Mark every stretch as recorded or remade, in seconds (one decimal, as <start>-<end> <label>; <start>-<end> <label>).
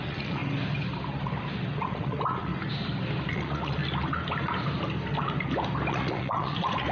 0.0-0.4 remade; 0.4-1.8 recorded; 1.8-2.5 remade; 2.5-3.3 recorded; 3.3-3.8 remade; 3.8-5.9 recorded; 5.9-6.9 remade